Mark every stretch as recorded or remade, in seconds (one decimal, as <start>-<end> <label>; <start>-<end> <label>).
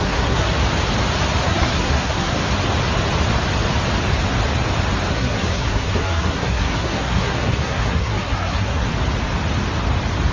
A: 0.0-0.5 remade; 0.5-1.4 recorded; 1.4-2.4 remade; 2.4-5.1 recorded; 5.1-8.9 remade; 8.9-10.3 recorded